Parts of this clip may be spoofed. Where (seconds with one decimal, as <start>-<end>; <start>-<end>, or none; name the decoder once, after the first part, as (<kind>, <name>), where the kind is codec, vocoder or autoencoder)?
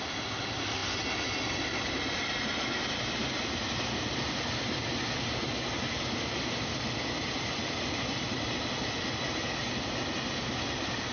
none